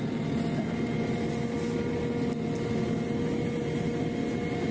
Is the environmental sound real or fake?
real